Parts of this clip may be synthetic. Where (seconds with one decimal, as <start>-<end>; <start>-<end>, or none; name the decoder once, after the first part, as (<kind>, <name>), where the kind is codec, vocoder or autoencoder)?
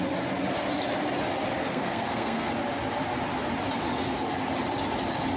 1.6-2.5 (codec, SNAC)